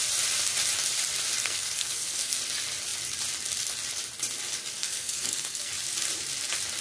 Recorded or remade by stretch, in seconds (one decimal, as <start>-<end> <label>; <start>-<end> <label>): 0.0-1.4 recorded; 1.4-2.4 remade; 2.4-4.8 recorded; 4.8-5.7 remade; 5.7-6.8 recorded